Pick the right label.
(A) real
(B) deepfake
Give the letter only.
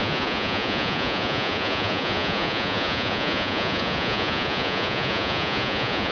B